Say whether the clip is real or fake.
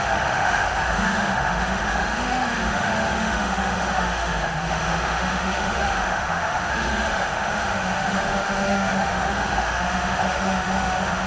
fake